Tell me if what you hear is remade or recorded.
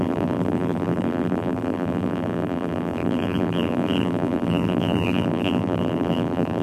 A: remade